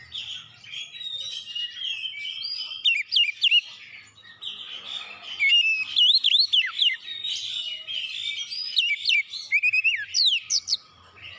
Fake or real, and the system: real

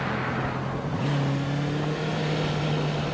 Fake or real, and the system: real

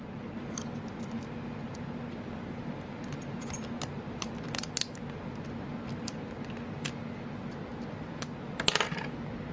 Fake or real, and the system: real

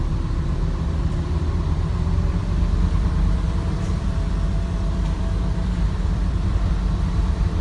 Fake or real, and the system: fake, vocoder, BigVGAN v2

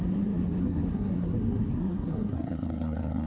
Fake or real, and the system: fake, codec, SNAC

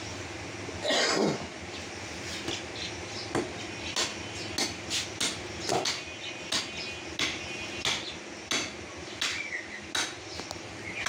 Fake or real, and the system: real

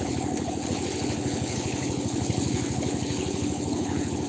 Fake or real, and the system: fake, codec, HILCodec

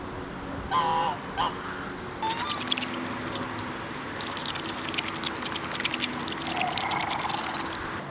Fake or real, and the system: real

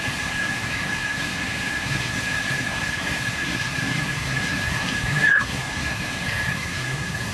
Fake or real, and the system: fake, codec, SNAC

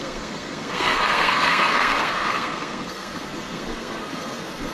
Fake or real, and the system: fake, codec, SNAC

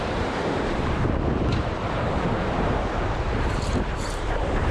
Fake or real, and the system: fake, vocoder, BigVGAN v2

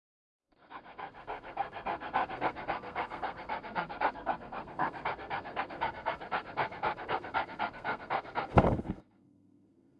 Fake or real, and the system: fake, codec, SNAC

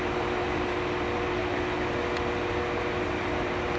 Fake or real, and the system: real